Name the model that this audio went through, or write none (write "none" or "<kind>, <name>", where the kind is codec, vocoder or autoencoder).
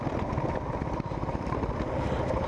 none